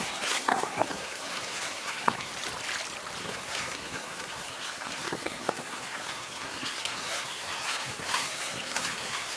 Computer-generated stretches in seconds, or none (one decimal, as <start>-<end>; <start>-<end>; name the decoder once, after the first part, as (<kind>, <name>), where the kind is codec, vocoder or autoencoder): 0.0-2.3 (codec, SNAC); 3.2-9.4

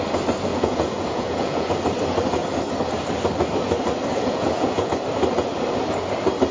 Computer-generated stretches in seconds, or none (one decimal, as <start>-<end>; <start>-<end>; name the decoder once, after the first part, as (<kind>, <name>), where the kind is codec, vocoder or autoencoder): 0.5-1.7 (vocoder, Vocos); 4.1-4.9